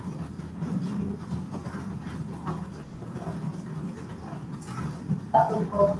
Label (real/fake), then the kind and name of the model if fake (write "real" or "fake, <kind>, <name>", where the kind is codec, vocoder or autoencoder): fake, vocoder, BigVGAN v2